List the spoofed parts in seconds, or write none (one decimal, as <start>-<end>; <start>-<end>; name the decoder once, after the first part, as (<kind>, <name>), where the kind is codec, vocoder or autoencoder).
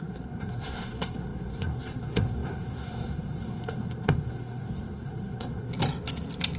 0.0-5.7 (codec, SNAC)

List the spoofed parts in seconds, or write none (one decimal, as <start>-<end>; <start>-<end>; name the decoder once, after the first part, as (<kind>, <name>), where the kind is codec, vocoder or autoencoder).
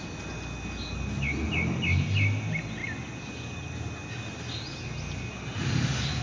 none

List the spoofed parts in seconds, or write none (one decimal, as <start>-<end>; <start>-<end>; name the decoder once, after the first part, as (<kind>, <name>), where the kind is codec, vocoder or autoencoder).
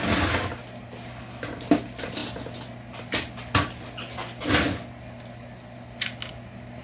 none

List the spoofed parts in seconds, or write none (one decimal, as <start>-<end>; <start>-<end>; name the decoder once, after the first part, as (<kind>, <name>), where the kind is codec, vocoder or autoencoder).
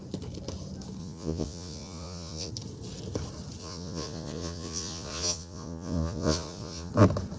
1.0-2.5 (vocoder, Vocos); 3.6-6.9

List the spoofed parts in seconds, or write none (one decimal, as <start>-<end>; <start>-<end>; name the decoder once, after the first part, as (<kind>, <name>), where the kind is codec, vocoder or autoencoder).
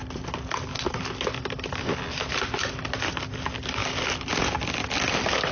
none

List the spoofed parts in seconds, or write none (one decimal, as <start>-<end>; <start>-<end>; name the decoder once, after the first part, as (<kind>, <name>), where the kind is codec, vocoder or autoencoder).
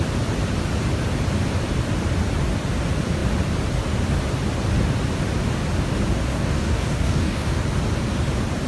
6.3-7.5 (codec, DAC)